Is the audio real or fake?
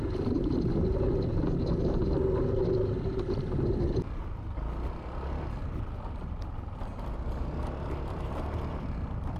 real